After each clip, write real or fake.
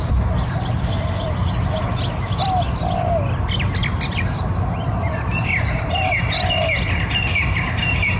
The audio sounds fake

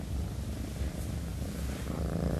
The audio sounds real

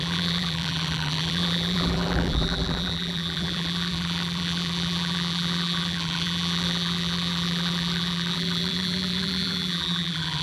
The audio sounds fake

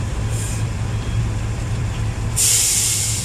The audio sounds fake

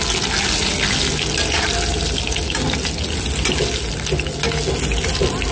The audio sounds real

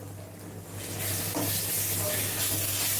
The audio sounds real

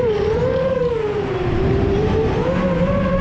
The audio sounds fake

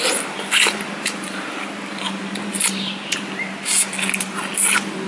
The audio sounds real